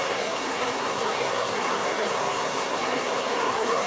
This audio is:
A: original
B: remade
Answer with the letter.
B